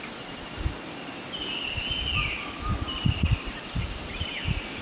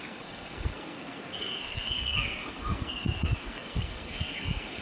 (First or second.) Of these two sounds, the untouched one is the first